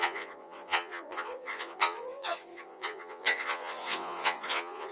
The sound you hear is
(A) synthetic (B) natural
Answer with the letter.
A